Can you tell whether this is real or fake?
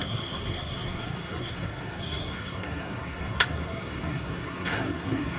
fake